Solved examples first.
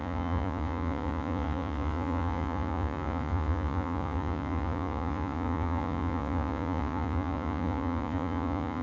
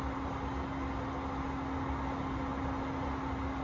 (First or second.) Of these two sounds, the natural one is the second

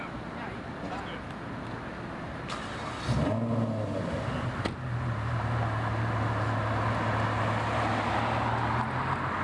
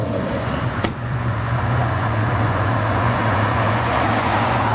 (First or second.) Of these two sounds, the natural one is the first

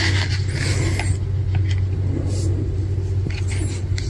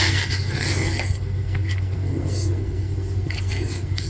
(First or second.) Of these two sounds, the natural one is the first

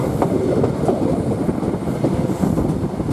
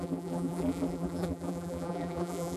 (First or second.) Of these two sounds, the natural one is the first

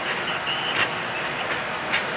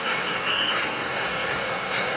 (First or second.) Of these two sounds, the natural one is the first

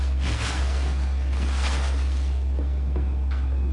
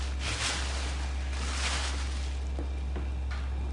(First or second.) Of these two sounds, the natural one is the second